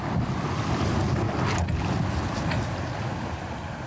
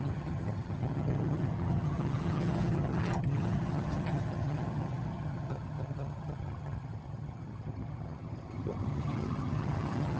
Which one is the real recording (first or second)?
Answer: first